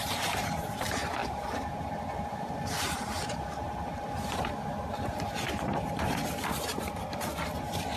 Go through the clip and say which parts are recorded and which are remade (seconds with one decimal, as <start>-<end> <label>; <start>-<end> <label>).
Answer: 0.0-8.0 remade